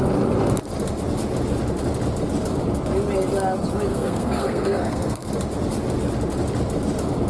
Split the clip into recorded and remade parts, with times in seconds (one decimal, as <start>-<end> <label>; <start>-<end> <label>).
0.0-3.9 recorded; 3.9-5.3 remade; 5.3-7.3 recorded